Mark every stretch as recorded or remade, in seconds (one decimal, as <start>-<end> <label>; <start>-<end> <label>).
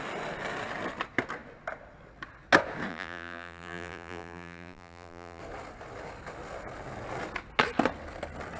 0.0-2.9 recorded; 2.9-5.4 remade; 5.4-8.6 recorded